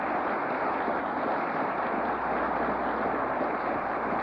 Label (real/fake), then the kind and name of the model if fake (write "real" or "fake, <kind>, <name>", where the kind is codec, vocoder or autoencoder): real